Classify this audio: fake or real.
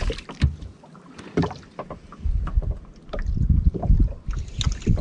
real